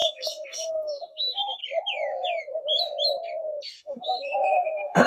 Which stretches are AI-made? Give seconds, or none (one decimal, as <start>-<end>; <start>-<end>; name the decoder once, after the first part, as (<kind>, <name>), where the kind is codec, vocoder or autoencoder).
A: 0.0-1.6 (codec, SNAC); 3.8-5.1